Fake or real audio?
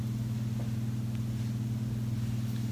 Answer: real